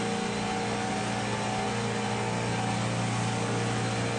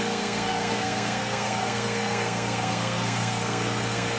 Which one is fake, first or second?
second